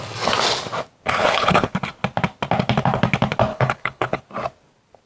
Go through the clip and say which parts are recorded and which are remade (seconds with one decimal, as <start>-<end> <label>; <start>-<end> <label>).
0.0-1.2 recorded; 1.2-1.7 remade; 1.7-3.5 recorded; 3.5-4.2 remade; 4.2-5.1 recorded